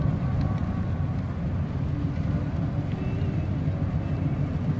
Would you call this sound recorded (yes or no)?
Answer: yes